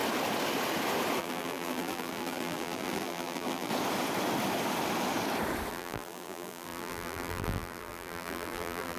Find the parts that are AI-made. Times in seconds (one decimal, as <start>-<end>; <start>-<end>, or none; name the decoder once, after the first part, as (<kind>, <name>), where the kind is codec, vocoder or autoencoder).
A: 1.2-3.7 (vocoder, BigVGAN v2); 5.7-9.0